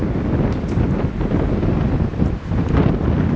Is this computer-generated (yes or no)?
no